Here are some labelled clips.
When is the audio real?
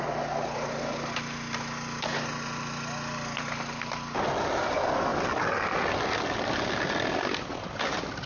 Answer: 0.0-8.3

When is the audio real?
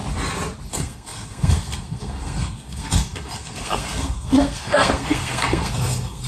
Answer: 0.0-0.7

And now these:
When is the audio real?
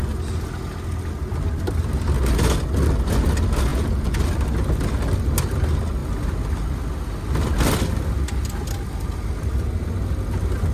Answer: 0.0-3.7; 4.2-10.7